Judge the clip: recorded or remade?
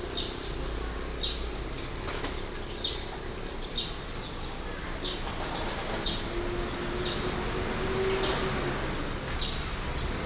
recorded